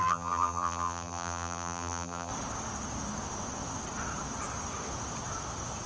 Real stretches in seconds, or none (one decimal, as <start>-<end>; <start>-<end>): 2.3-5.9